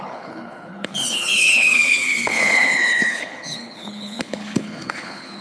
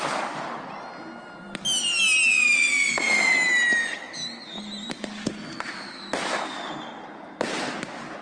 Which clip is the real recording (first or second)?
second